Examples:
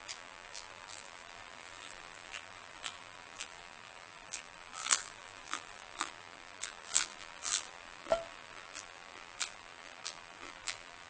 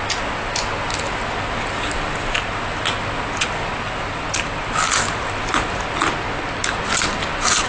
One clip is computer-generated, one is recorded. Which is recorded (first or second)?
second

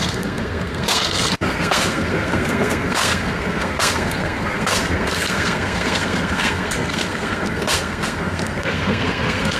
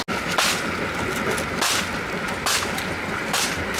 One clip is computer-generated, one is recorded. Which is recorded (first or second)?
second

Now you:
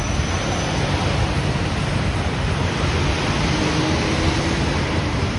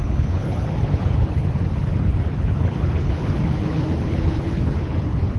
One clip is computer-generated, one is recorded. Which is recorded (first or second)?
first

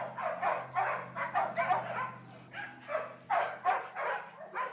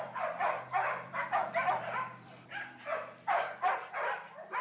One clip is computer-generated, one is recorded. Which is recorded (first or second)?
first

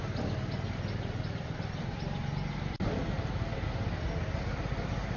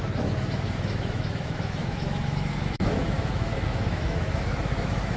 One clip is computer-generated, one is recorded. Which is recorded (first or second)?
first